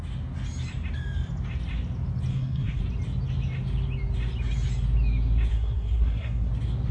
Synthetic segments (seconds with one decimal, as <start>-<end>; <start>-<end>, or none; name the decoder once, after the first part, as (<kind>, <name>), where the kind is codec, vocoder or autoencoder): 2.3-2.8 (codec, SNAC); 5.5-6.5